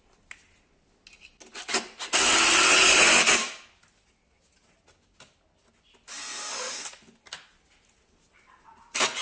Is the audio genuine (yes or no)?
yes